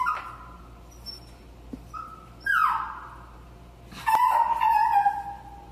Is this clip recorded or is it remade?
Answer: recorded